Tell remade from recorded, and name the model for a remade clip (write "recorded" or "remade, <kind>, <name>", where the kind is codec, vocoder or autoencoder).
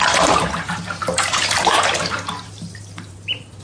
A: remade, vocoder, BigVGAN v2